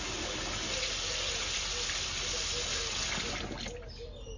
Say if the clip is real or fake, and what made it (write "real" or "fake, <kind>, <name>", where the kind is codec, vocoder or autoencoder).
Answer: real